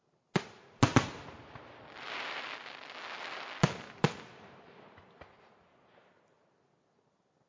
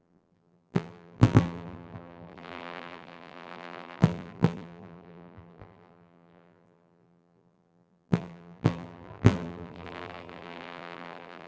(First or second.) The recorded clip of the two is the first